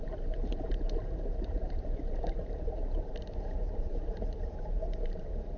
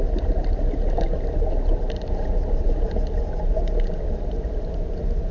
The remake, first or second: first